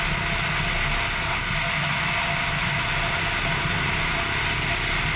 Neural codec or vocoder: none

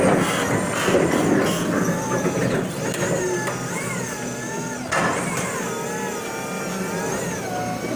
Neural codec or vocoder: none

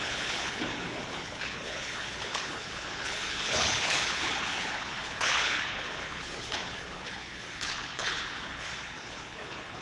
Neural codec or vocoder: codec, HILCodec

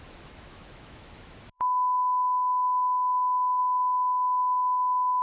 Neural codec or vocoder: autoencoder, DAC-VAE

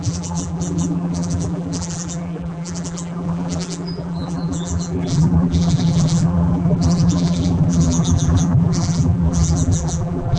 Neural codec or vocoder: vocoder, BigVGAN v2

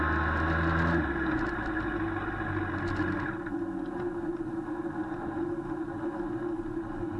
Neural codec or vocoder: none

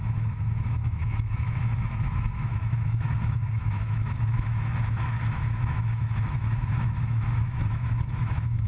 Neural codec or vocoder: autoencoder, DAC-VAE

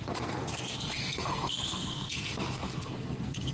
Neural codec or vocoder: codec, SNAC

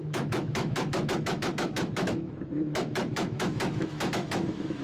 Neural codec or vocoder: autoencoder, DAC-VAE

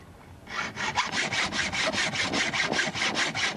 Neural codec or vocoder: none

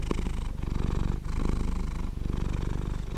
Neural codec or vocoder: none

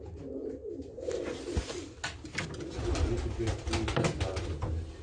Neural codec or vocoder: none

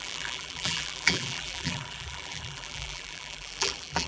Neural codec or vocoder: vocoder, BigVGAN v2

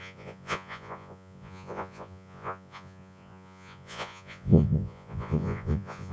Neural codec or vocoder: vocoder, Vocos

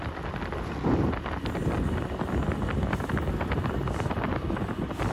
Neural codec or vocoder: none